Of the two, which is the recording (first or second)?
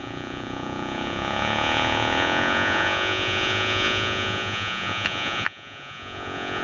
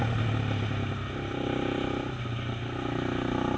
second